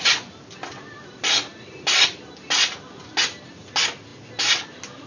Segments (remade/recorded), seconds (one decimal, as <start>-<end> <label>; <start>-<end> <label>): 0.0-5.1 recorded